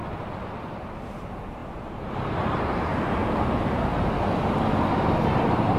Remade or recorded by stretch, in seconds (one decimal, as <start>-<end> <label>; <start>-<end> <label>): 0.0-0.7 recorded; 0.7-3.2 remade; 3.2-5.2 recorded; 5.2-5.8 remade